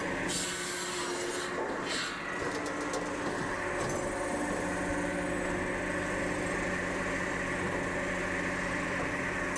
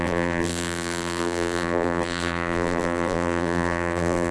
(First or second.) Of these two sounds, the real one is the first